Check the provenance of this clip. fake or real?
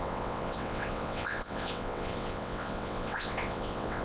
fake